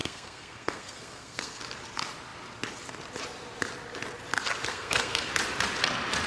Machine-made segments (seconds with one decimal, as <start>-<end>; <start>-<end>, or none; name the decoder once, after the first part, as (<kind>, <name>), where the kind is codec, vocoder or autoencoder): 0.0-1.6 (codec, SNAC); 4.7-5.3